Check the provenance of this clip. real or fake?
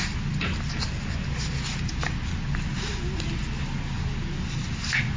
real